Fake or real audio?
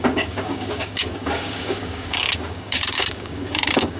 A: fake